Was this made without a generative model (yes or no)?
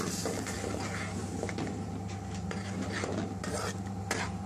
yes